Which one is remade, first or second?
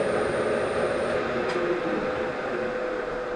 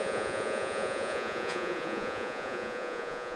second